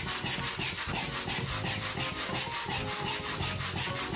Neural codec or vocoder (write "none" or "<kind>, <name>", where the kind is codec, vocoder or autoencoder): none